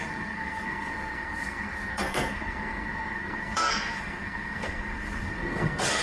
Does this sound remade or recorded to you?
remade